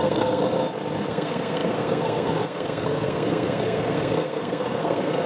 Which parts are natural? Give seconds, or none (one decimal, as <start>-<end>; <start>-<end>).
0.4-1.1